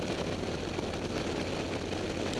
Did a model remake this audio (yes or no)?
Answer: no